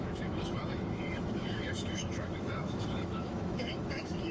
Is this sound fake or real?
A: fake